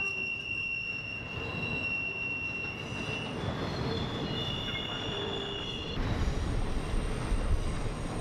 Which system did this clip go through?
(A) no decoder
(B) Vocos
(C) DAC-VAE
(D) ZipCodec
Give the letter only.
A